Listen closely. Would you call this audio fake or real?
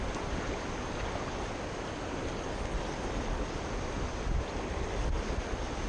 real